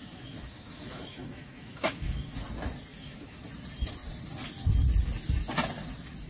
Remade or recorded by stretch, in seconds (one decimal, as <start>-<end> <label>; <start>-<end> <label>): 0.0-2.4 remade; 2.4-2.9 recorded; 2.9-3.4 remade; 3.4-6.3 recorded